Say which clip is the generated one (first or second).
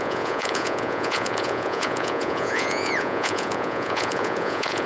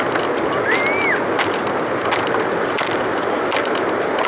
first